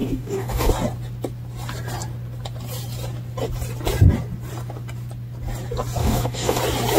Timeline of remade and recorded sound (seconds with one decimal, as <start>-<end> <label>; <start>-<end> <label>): 0.0-0.7 remade; 0.7-6.0 recorded; 6.0-6.6 remade; 6.6-7.0 recorded